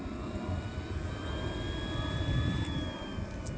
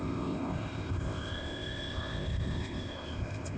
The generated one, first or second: second